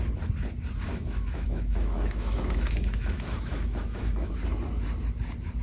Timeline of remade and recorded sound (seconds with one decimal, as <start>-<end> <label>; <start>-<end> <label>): 0.0-0.9 recorded; 0.9-4.3 remade; 4.3-5.6 recorded